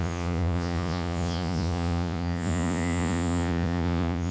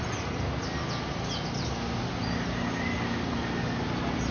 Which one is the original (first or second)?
second